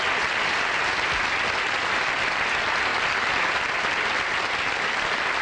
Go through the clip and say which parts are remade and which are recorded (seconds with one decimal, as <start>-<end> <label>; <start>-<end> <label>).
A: 0.0-5.4 recorded